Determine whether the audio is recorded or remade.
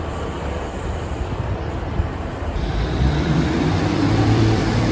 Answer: remade